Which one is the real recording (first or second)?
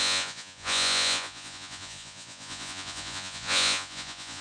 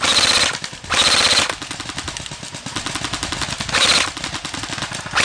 second